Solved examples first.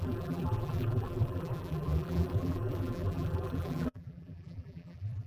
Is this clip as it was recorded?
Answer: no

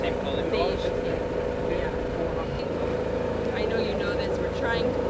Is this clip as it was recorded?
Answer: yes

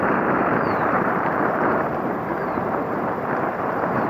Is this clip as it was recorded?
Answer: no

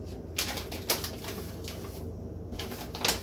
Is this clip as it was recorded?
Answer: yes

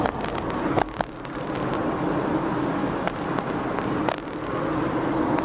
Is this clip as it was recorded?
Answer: yes